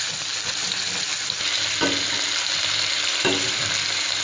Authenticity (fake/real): real